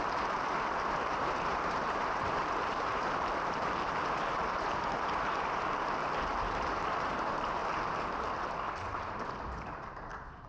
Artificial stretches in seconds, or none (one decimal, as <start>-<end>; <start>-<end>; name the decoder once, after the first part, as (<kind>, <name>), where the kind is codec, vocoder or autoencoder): 0.0-7.6 (vocoder, BigVGAN v2); 9.6-10.5